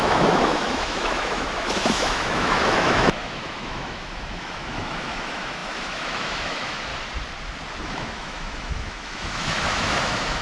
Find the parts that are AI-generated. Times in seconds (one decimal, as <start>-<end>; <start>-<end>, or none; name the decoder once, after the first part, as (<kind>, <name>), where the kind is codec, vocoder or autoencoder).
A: 0.0-6.9 (autoencoder, DAC-VAE); 7.8-10.4